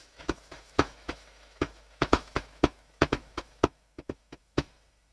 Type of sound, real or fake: fake